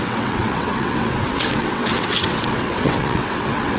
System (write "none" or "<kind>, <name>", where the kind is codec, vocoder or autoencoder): vocoder, WaveNeXt